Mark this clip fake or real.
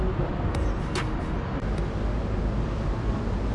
real